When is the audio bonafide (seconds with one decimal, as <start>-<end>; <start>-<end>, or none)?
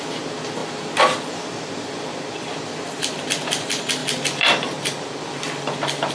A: 0.0-0.6; 2.5-4.0